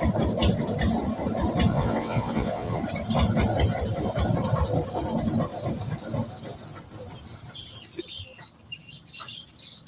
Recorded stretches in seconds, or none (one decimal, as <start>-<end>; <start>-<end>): 0.0-1.7; 2.8-9.9